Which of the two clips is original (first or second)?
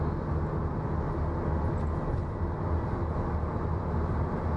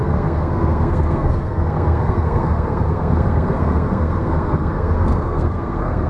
first